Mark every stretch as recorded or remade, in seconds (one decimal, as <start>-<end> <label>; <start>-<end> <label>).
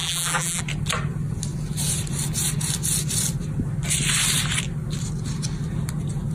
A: 0.0-0.6 remade; 0.6-6.3 recorded